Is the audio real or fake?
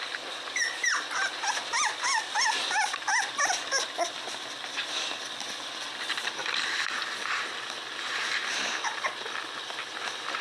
real